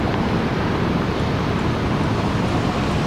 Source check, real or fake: real